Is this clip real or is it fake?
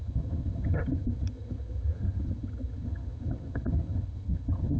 fake